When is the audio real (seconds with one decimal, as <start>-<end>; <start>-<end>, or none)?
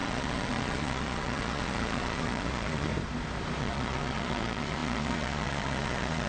2.9-3.6